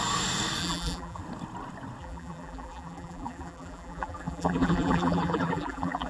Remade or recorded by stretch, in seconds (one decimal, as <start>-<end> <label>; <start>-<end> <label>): 0.0-0.6 recorded; 0.6-1.2 remade; 1.2-2.0 recorded; 2.0-6.1 remade

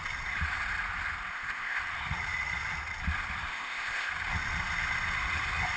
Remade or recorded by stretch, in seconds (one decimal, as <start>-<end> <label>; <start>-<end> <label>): 0.0-1.3 recorded; 1.3-1.8 remade; 1.8-3.5 recorded; 3.5-4.1 remade; 4.1-5.8 recorded

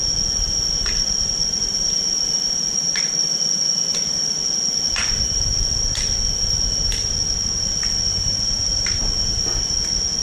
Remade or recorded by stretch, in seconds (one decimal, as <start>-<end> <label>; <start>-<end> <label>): 0.0-8.1 recorded; 8.1-9.4 remade; 9.4-10.2 recorded

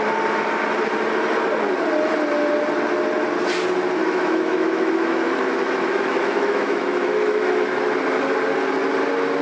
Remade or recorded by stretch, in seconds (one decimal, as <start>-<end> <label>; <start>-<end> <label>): 0.0-4.0 recorded; 4.0-7.8 remade; 7.8-9.4 recorded

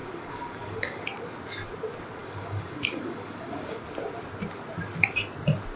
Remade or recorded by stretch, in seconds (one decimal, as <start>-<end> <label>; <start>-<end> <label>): 0.0-1.0 remade; 1.0-2.2 recorded; 2.2-3.8 remade; 3.8-5.8 recorded

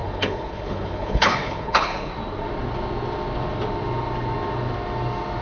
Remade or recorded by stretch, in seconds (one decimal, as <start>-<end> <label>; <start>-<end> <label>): 0.0-2.1 remade; 2.1-5.4 recorded